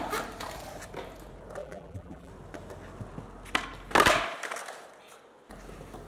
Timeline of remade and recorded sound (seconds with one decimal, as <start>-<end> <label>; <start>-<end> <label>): 0.0-1.6 recorded; 1.6-2.3 remade; 2.3-6.1 recorded